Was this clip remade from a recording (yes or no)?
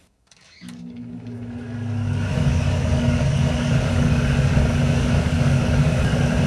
yes